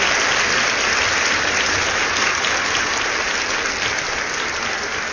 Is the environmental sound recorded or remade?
recorded